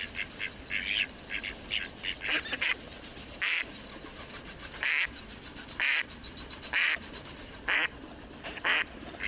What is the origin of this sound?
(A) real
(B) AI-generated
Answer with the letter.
A